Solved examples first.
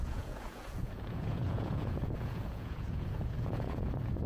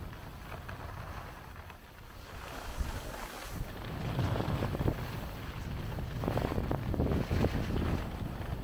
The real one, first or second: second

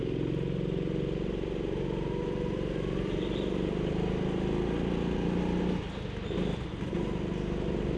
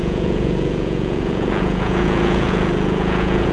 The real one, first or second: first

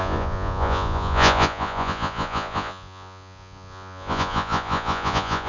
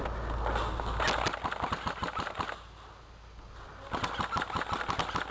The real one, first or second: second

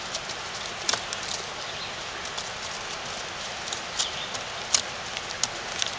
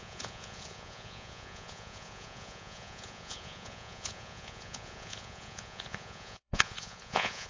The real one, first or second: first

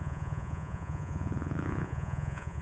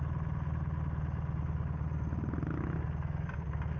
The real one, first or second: second